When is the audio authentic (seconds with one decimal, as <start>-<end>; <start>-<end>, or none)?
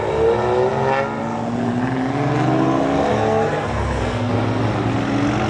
0.0-3.1; 4.3-5.5